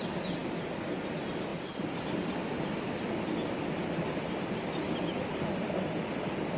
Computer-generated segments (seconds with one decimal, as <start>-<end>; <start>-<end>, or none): none